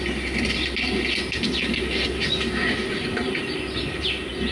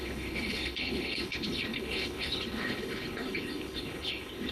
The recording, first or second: first